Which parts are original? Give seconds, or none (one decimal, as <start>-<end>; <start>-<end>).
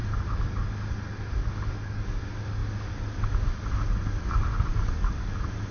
0.0-1.4; 2.2-4.7; 5.3-5.7